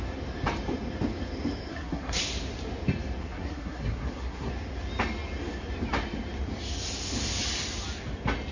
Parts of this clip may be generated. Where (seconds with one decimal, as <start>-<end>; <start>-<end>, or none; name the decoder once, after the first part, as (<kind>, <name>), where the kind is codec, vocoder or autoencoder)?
1.7-2.2 (codec, SNAC); 3.2-4.5